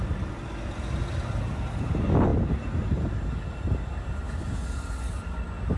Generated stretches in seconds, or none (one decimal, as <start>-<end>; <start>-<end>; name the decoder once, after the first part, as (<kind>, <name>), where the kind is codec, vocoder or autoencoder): 2.3-3.1 (vocoder, BigVGAN v2)

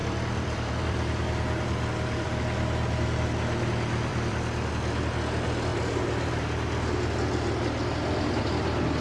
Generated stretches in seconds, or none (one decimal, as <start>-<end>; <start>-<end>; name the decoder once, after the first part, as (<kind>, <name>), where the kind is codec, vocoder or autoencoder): 0.0-2.4 (vocoder, BigVGAN v2); 4.1-4.7

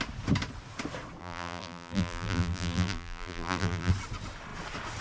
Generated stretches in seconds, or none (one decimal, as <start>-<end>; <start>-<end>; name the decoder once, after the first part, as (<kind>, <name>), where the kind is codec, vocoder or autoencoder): 1.2-3.9 (vocoder, BigVGAN v2)